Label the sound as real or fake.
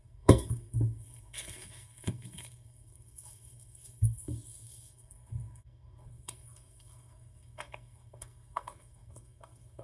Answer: fake